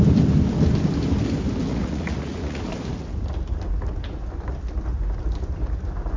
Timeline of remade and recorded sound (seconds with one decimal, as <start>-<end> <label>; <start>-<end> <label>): 0.0-1.7 recorded; 1.7-2.6 remade; 2.6-6.2 recorded